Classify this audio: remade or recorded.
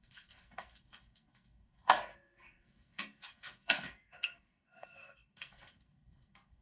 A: remade